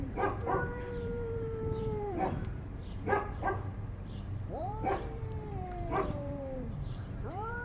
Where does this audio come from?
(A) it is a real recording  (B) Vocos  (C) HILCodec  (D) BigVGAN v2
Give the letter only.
D